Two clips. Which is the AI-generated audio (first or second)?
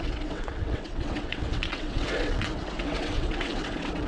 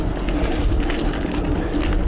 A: first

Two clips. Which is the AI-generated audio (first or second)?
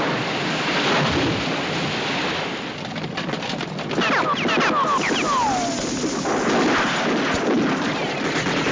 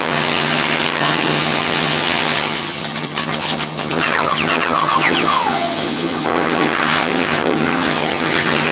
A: second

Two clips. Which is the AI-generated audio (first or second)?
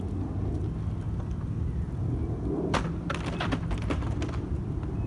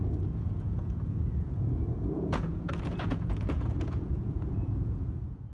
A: second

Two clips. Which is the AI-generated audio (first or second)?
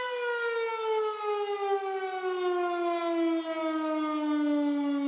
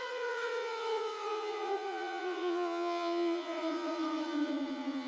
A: second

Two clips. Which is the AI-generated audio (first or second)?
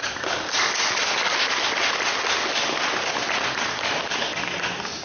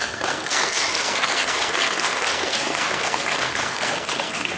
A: second